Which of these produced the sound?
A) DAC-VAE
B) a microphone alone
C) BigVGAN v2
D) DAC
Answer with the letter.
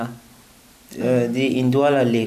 B